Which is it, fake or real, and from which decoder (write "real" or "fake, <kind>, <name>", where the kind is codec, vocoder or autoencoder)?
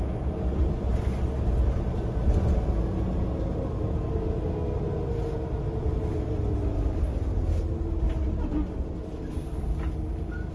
real